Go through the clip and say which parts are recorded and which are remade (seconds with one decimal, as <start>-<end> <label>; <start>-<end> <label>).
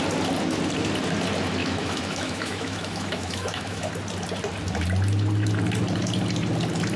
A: 0.0-1.6 recorded; 1.6-3.9 remade; 3.9-7.0 recorded